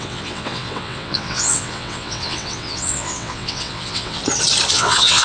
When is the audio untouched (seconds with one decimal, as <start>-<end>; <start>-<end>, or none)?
4.2-4.7